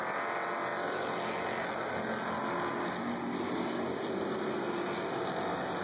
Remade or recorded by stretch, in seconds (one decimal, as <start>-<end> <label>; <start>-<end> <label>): 0.0-5.8 recorded